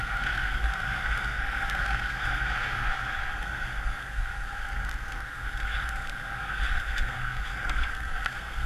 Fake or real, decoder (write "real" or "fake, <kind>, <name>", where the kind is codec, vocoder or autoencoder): fake, codec, SNAC